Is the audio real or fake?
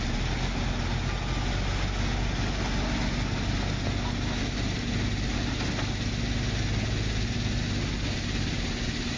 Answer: real